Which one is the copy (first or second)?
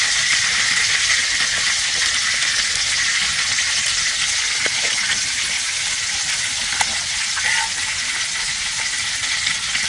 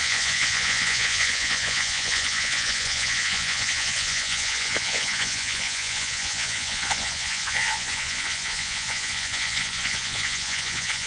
second